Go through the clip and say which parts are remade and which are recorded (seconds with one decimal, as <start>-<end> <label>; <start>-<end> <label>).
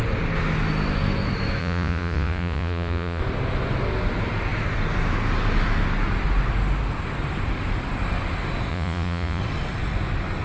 0.0-1.6 recorded; 1.6-3.2 remade; 3.2-8.7 recorded; 8.7-9.4 remade; 9.4-10.4 recorded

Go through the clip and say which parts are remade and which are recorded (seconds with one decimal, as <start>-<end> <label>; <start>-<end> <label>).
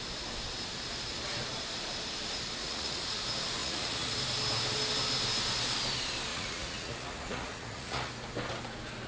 0.0-2.6 recorded; 2.6-3.2 remade; 3.2-3.6 recorded; 3.6-4.2 remade; 4.2-6.3 recorded; 6.3-8.1 remade; 8.1-9.1 recorded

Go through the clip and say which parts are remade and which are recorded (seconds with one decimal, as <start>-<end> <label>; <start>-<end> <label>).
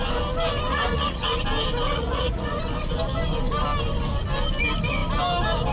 0.0-0.7 recorded; 0.7-1.4 remade; 1.4-1.9 recorded; 1.9-2.6 remade; 2.6-5.7 recorded